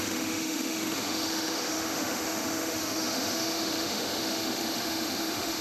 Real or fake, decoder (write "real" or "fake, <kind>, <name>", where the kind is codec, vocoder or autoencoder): fake, autoencoder, DAC-VAE